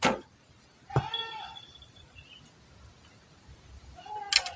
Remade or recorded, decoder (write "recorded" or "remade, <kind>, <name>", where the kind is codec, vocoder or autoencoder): recorded